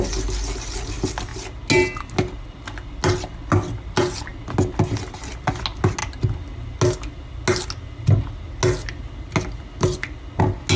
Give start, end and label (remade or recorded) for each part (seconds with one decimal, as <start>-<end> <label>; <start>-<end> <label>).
0.0-10.8 recorded